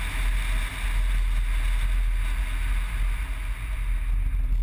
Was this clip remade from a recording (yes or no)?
no